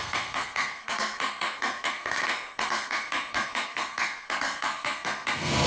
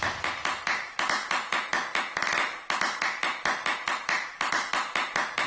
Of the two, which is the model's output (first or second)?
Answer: first